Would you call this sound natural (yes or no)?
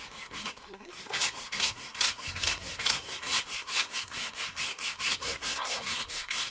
no